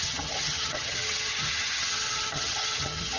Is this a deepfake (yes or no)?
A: yes